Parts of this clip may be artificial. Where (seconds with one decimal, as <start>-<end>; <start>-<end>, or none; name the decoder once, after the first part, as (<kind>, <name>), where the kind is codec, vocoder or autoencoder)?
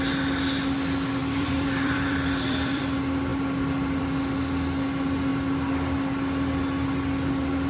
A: 1.2-2.8 (vocoder, BigVGAN v2)